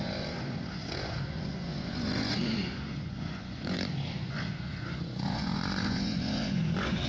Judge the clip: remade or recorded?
remade